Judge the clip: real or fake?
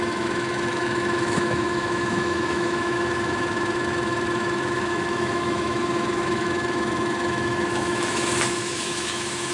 fake